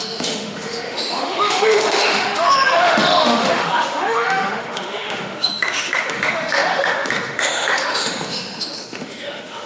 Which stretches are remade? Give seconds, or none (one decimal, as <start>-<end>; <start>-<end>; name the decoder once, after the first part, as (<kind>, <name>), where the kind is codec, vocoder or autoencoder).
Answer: 0.0-9.7 (autoencoder, DAC-VAE)